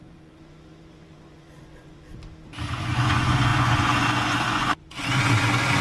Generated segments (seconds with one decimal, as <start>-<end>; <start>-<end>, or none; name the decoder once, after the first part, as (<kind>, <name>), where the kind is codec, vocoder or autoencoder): 0.0-2.1 (vocoder, Vocos); 2.7-5.8